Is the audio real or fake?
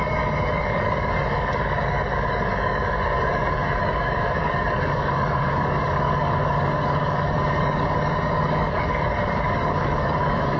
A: fake